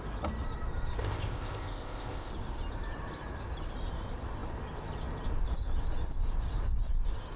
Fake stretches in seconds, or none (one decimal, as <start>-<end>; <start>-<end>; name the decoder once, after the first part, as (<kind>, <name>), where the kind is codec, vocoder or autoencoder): 1.0-2.3 (codec, ZipCodec)